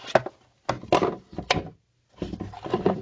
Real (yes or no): yes